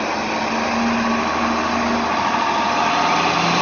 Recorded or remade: recorded